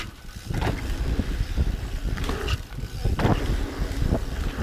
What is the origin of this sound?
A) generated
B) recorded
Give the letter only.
B